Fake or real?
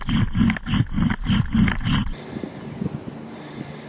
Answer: real